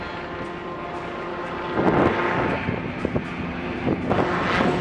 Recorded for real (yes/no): yes